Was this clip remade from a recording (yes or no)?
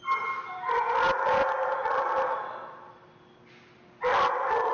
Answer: no